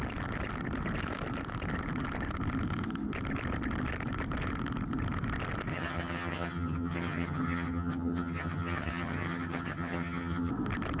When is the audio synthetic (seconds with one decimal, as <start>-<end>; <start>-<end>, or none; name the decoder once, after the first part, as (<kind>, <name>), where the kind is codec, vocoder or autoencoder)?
5.7-10.5 (vocoder, HiFi-GAN)